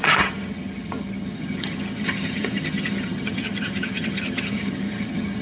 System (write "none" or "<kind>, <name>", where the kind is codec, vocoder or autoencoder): vocoder, HiFi-GAN